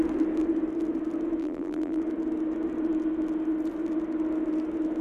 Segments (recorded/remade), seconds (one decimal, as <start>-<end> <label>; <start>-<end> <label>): 0.0-1.4 recorded; 1.4-2.0 remade; 2.0-5.0 recorded